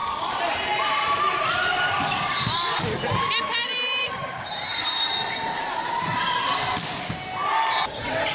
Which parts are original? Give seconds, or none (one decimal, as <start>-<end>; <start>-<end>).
1.2-1.6; 6.5-8.3